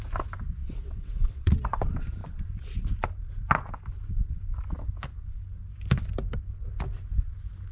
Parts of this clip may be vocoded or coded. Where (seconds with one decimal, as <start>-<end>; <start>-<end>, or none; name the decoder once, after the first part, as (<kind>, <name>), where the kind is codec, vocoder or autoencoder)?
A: 0.6-1.5 (vocoder, WaveNeXt)

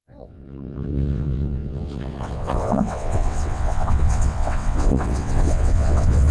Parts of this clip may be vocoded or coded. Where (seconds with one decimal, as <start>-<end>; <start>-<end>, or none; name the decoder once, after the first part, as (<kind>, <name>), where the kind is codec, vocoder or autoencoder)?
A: 0.0-6.3 (vocoder, WaveNeXt)

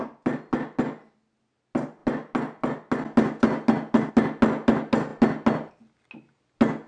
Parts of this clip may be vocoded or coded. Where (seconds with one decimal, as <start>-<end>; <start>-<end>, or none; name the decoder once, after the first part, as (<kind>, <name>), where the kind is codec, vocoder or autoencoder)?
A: none